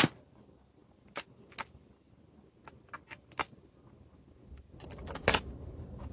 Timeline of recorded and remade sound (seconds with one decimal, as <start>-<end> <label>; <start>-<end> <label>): 0.0-6.1 recorded